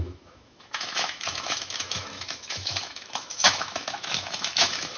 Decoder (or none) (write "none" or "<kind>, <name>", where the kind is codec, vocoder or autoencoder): autoencoder, DAC-VAE